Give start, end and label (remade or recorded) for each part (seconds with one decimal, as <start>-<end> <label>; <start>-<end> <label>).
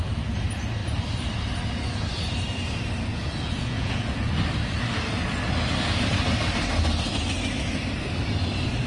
0.0-3.1 recorded; 3.1-4.3 remade; 4.3-8.9 recorded